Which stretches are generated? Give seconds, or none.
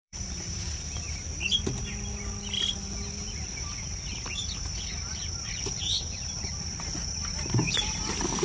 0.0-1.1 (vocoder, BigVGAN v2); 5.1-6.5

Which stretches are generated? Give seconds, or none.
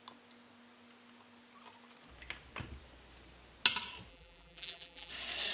4.1-5.1 (vocoder, BigVGAN v2)